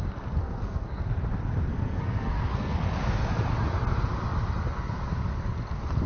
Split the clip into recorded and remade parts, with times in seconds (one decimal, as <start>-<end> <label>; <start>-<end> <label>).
0.0-0.4 recorded; 0.4-1.0 remade; 1.0-1.7 recorded; 1.7-2.8 remade; 2.8-6.1 recorded